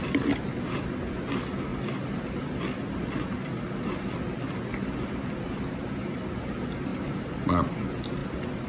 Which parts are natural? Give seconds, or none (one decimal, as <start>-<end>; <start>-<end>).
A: 0.0-8.7